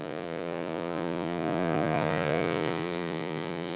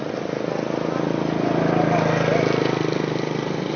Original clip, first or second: second